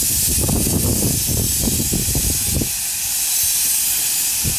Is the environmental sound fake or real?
real